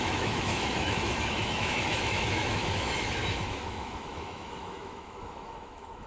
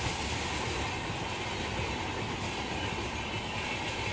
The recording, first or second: second